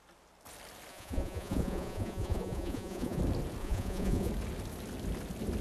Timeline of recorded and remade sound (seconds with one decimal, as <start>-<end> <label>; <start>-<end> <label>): 0.0-0.9 recorded; 0.9-3.2 remade; 3.2-3.6 recorded; 3.6-4.3 remade; 4.3-5.6 recorded